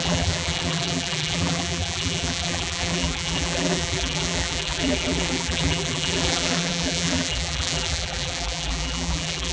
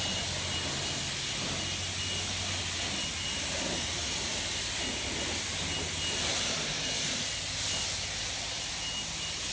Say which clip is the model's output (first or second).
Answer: first